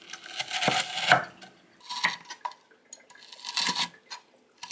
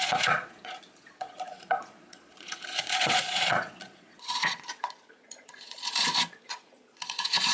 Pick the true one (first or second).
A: first